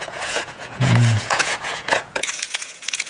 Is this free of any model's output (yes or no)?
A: no